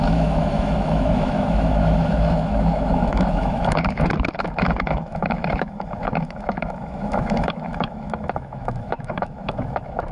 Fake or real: fake